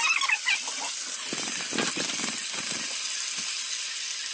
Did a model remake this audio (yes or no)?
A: no